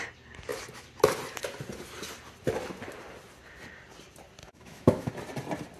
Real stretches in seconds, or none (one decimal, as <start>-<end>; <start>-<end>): 0.0-4.4; 5.1-5.8